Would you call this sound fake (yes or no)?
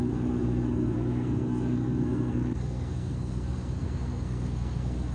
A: yes